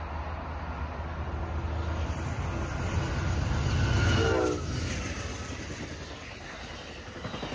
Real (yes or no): yes